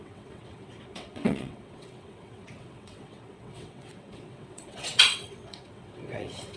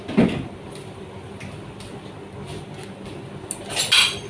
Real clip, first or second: second